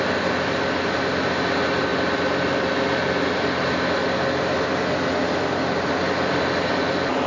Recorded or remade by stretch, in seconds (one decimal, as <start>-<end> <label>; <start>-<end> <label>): 0.0-7.3 recorded

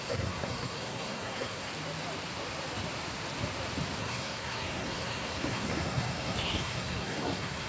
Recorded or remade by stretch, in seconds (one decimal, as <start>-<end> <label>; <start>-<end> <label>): 0.0-1.7 remade; 1.7-4.0 recorded; 4.0-7.7 remade

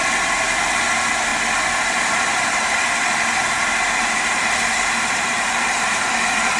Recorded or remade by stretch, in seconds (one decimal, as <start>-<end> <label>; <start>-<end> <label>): 0.0-6.6 recorded

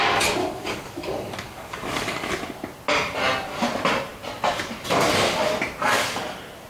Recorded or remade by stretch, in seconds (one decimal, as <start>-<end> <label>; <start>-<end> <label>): 0.0-0.4 recorded; 0.4-2.3 remade; 2.3-6.7 recorded

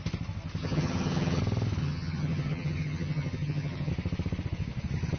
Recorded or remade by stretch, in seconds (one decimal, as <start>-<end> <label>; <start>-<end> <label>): 0.0-0.6 recorded; 0.6-1.4 remade; 1.4-1.8 recorded; 1.8-3.9 remade; 3.9-5.2 recorded

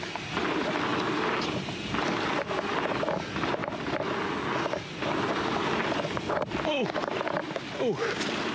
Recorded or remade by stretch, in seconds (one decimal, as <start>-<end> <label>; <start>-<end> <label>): 0.0-8.5 recorded